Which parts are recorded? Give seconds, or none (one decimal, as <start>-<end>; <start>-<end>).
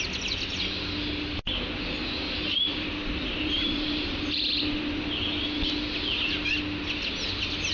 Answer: 0.0-2.7; 5.0-7.7